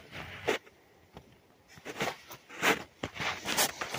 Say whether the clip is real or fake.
real